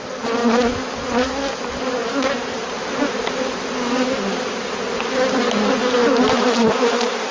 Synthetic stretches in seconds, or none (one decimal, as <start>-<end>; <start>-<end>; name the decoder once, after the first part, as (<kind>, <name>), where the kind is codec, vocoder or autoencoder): 2.0-3.3 (vocoder, BigVGAN v2); 6.0-7.3